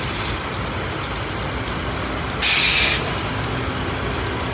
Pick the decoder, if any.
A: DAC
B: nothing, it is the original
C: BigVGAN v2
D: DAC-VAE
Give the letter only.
B